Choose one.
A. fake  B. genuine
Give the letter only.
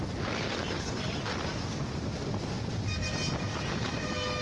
B